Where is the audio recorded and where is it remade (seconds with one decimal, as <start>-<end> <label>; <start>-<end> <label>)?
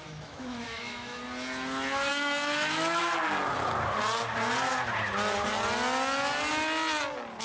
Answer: 0.0-1.2 remade; 1.2-2.1 recorded; 2.1-3.0 remade; 3.0-7.4 recorded